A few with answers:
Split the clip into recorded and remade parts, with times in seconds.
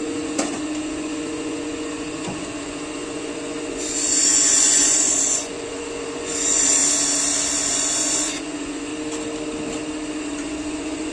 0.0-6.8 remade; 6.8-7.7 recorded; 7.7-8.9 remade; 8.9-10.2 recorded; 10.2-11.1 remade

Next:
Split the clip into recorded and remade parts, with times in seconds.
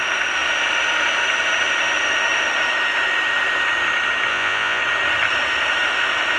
0.0-4.3 recorded; 4.3-4.8 remade; 4.8-6.4 recorded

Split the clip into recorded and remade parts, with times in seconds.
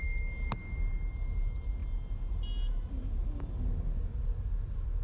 0.0-5.0 recorded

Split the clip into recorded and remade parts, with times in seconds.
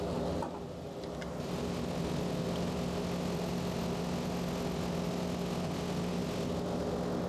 0.0-7.3 recorded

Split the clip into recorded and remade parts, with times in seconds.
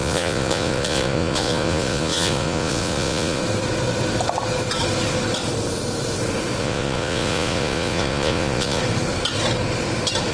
0.0-3.4 remade; 3.4-6.6 recorded; 6.6-8.8 remade; 8.8-10.3 recorded